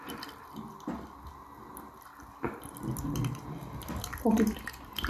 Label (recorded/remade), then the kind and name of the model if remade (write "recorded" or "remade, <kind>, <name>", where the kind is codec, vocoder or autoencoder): recorded